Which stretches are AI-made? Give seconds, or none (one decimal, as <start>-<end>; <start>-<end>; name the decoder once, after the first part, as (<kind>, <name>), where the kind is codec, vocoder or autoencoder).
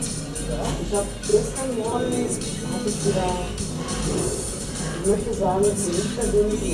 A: 1.3-2.0 (vocoder, BigVGAN v2); 4.1-6.1